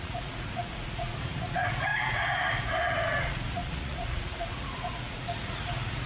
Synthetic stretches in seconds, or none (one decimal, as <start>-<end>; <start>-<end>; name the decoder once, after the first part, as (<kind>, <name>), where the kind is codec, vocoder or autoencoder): 0.0-6.1 (vocoder, Vocos)